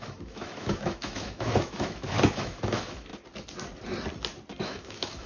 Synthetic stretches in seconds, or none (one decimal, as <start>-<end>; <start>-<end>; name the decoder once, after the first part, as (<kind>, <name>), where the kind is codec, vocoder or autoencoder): 0.0-3.1 (autoencoder, DAC-VAE); 4.6-5.3